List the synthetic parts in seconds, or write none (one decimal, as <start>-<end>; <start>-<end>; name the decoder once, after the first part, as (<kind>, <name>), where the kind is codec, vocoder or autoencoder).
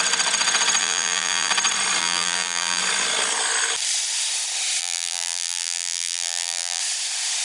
0.8-1.5 (vocoder, BigVGAN v2); 2.0-2.8; 4.8-6.8